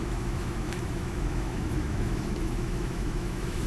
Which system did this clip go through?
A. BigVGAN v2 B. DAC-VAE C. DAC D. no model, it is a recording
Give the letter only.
B